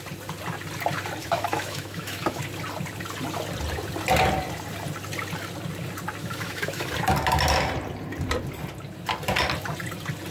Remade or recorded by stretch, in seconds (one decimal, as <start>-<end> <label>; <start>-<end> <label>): 0.0-1.2 recorded; 1.2-2.4 remade; 2.4-6.2 recorded; 6.2-6.9 remade; 6.9-10.3 recorded